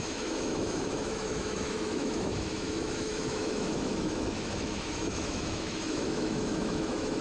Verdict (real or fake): fake